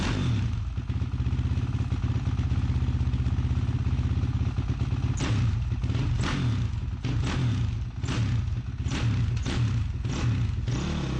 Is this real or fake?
real